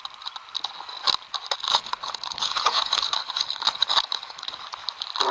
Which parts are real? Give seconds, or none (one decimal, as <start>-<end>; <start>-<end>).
0.0-1.7; 4.5-5.3

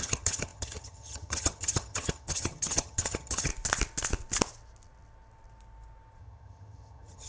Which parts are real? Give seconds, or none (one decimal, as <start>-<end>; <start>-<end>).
3.5-6.2

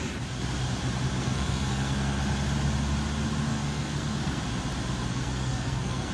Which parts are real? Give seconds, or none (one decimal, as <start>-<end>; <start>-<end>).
0.0-1.2; 2.2-3.5; 4.4-5.1